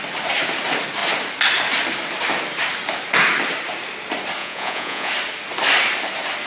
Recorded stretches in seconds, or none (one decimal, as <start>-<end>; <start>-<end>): 0.0-4.4; 5.1-6.5